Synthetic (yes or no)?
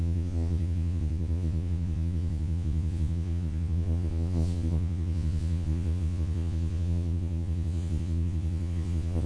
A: yes